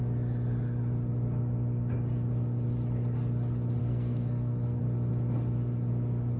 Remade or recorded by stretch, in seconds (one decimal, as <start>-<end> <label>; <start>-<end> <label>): 0.0-3.8 recorded; 3.8-4.8 remade; 4.8-6.4 recorded

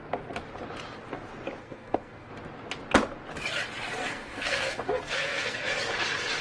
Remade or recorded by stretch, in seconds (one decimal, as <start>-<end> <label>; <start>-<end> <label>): 0.0-1.6 recorded; 1.6-2.3 remade; 2.3-4.0 recorded; 4.0-5.7 remade; 5.7-6.4 recorded

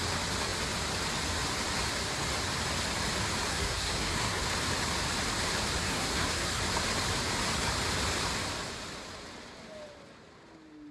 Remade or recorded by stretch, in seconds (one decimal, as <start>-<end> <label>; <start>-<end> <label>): 0.0-3.5 recorded; 3.5-4.4 remade; 4.4-5.8 recorded; 5.8-6.6 remade; 6.6-10.9 recorded

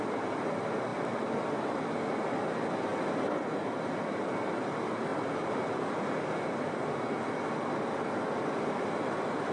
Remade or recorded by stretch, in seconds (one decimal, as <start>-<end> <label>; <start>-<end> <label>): 0.0-9.5 recorded

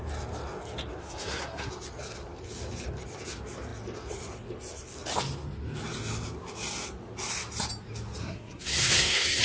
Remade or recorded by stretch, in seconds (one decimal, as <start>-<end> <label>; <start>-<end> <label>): 0.0-1.0 recorded; 1.0-1.7 remade; 1.7-8.2 recorded; 8.2-9.4 remade

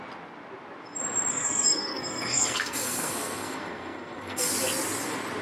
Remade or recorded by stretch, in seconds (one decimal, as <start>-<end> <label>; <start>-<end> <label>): 0.0-1.3 recorded; 1.3-4.5 remade; 4.5-5.4 recorded

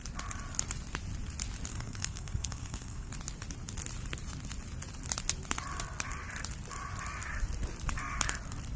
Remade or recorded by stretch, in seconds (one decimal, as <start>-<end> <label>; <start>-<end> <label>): 0.0-1.7 recorded; 1.7-3.1 remade; 3.1-8.8 recorded